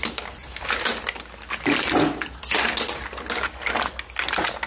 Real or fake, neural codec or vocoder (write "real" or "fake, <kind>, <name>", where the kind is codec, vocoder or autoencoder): real